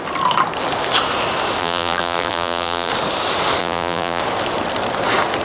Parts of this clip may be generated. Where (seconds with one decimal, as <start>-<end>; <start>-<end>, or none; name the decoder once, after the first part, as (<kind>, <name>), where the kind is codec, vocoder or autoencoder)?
1.6-2.9 (vocoder, BigVGAN v2); 3.6-4.2

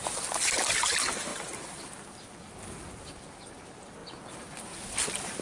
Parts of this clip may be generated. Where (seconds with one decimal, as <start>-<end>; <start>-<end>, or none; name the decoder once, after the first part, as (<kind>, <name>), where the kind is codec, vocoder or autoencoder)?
1.3-3.4 (vocoder, BigVGAN v2); 4.0-4.6

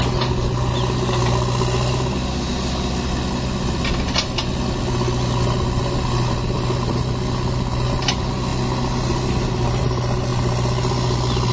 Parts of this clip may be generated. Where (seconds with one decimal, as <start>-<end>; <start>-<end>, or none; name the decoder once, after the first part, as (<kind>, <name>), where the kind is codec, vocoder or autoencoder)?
none

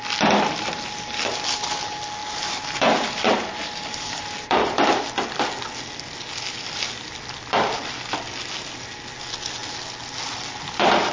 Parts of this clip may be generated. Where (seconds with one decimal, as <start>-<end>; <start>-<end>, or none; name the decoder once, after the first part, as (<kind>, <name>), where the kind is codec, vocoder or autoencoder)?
2.2-5.0 (vocoder, BigVGAN v2)

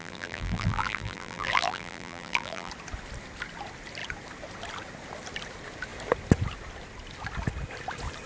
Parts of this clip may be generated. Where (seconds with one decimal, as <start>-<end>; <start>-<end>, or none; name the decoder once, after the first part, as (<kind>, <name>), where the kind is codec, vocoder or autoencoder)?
0.0-2.7 (vocoder, BigVGAN v2)

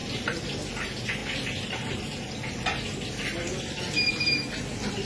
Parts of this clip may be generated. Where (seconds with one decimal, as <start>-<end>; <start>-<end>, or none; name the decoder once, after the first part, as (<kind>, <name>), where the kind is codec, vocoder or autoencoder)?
none

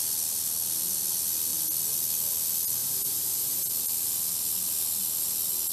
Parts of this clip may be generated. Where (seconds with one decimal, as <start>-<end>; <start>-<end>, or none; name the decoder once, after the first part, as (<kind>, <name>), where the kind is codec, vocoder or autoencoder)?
2.8-3.7 (vocoder, BigVGAN v2)